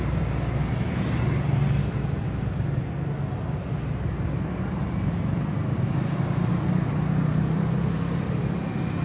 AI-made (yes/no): no